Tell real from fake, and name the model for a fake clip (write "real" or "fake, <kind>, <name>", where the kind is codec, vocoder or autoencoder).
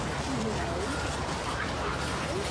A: real